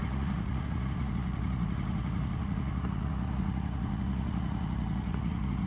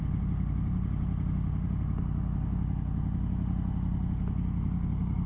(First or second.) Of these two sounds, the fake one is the first